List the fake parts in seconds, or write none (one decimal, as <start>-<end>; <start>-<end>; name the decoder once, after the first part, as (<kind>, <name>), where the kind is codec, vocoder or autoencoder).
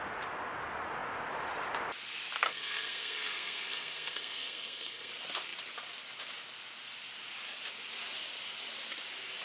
2.5-5.1 (codec, SNAC)